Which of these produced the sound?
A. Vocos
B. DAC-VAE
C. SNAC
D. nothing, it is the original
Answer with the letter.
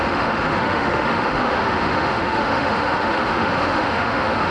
B